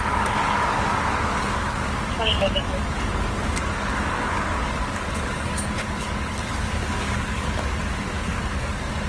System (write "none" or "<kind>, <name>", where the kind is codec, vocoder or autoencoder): codec, DAC